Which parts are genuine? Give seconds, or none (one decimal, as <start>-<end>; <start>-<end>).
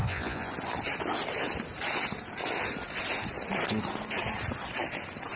0.5-5.4